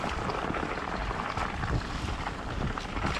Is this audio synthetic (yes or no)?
no